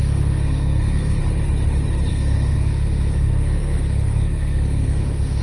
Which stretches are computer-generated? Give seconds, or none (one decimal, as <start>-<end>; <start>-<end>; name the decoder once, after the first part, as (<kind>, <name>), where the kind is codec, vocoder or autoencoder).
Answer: 0.0-1.2 (codec, SNAC); 2.1-5.4